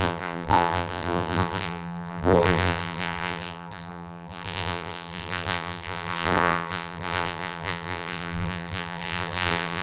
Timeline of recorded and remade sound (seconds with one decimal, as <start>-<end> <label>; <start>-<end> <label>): 0.0-9.8 remade